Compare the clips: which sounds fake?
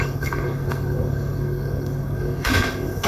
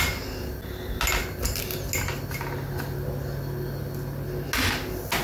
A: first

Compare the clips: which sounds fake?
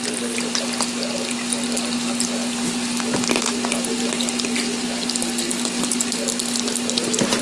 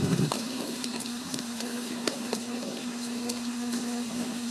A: second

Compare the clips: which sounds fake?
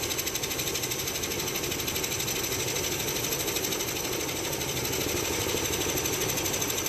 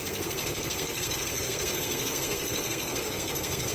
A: second